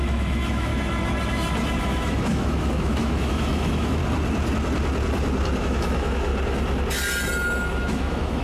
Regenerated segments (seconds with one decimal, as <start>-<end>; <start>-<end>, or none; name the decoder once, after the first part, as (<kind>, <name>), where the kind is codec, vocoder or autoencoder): 0.0-0.7 (autoencoder, DAC-VAE); 1.8-4.0; 5.6-6.3; 7.8-8.4